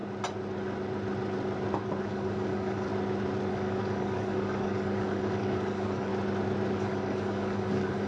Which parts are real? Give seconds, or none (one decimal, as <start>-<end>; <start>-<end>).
0.0-2.0; 2.9-3.5; 6.1-6.7